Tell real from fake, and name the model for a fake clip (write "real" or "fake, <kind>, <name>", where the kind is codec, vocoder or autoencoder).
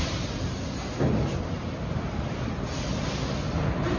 real